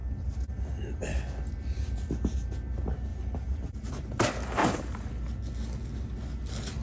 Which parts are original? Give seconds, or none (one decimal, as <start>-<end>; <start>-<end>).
0.0-3.1; 3.9-4.6; 5.1-6.8